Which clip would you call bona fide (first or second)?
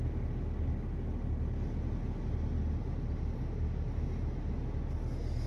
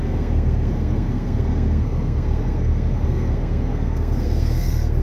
first